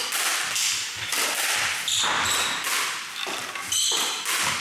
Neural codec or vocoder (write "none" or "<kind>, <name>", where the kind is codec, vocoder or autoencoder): none